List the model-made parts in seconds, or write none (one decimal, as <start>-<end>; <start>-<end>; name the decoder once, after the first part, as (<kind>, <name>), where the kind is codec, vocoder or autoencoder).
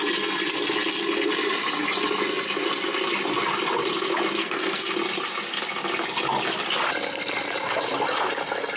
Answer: 4.4-4.9 (codec, SNAC)